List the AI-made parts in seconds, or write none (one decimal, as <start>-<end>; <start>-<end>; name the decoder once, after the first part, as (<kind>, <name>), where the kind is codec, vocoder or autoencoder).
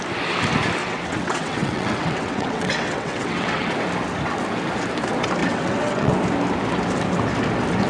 0.8-3.7 (vocoder, WaveNeXt); 5.4-6.1